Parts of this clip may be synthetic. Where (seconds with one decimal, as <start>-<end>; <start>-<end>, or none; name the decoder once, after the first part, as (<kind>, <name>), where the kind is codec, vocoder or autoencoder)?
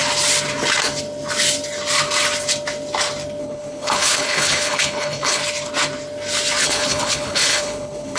3.4-5.4 (codec, HILCodec); 6.6-8.2